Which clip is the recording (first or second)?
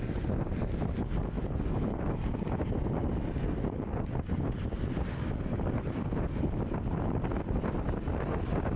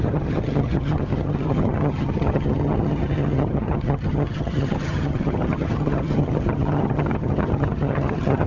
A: first